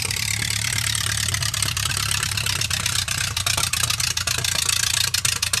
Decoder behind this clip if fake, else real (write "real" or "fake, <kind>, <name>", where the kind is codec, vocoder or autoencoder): fake, vocoder, BigVGAN v2